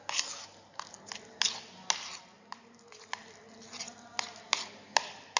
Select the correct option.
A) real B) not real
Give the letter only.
A